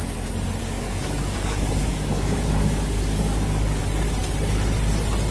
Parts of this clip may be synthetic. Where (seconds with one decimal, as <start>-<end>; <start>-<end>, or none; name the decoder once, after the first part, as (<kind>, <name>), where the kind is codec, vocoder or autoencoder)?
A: 0.6-3.8 (codec, DAC)